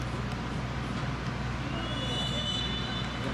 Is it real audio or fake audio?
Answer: real